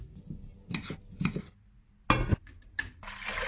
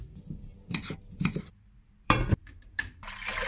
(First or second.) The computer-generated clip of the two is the second